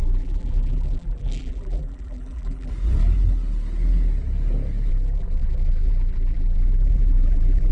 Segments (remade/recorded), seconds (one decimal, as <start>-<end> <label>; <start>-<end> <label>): 0.0-2.7 remade; 2.7-4.9 recorded; 4.9-7.7 remade